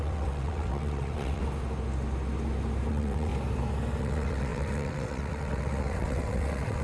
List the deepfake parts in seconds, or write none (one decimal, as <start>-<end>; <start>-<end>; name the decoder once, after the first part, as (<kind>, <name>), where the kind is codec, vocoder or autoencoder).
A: 0.0-1.4 (vocoder, WaveNeXt); 2.9-3.3; 4.0-6.8